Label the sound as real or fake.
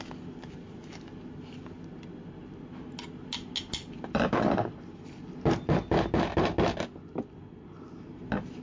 real